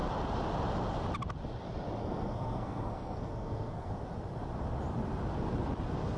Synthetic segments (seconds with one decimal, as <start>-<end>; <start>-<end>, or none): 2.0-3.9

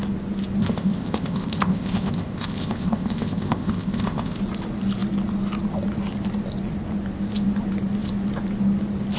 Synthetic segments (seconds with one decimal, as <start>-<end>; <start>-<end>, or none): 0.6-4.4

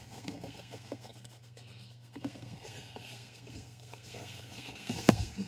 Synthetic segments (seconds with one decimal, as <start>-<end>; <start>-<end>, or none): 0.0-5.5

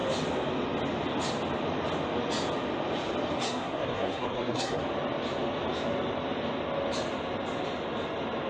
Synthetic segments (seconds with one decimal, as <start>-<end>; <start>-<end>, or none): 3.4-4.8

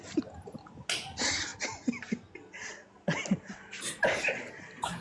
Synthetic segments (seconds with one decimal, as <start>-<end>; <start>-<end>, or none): none

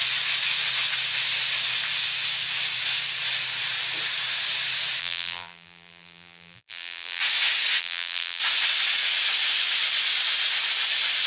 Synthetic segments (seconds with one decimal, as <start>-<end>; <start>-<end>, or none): 5.0-7.2; 7.8-8.4